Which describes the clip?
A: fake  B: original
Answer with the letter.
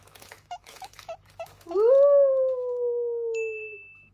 A